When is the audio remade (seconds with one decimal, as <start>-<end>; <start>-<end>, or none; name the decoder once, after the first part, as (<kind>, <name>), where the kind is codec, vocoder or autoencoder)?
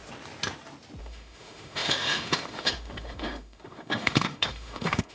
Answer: 1.0-5.1 (autoencoder, DAC-VAE)